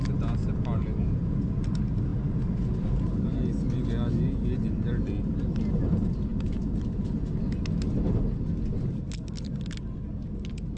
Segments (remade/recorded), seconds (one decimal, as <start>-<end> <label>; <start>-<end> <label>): 0.0-10.8 recorded